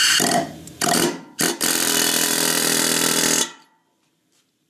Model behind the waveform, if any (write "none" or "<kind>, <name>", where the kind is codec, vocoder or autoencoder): vocoder, BigVGAN v2